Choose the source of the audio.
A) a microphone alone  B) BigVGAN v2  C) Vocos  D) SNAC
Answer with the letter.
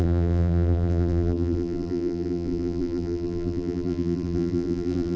B